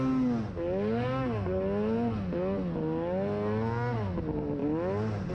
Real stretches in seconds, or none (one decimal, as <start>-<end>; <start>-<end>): 0.0-5.3